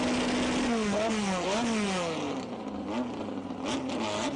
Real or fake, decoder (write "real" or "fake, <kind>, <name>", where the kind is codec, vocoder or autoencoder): real